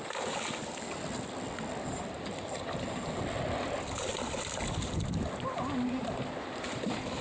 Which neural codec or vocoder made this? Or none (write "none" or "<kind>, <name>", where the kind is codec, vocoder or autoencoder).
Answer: none